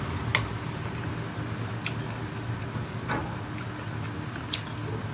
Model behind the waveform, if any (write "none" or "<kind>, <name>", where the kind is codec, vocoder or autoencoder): none